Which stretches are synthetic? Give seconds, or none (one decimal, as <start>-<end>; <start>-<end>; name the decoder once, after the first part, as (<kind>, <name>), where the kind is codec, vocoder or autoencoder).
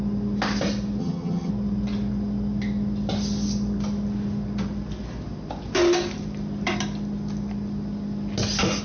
1.0-1.5 (vocoder, HiFi-GAN)